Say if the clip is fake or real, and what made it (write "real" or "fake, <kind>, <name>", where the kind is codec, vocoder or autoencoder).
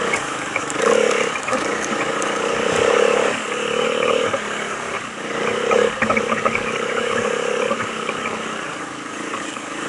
fake, codec, DAC